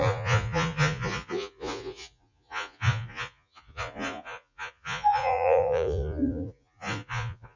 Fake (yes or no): yes